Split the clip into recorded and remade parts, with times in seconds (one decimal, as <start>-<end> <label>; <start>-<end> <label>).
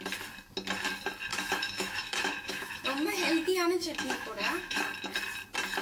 0.0-1.3 recorded; 1.3-4.8 remade; 4.8-5.8 recorded